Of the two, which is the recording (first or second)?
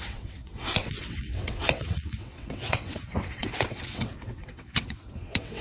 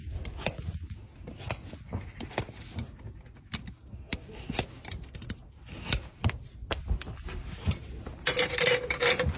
second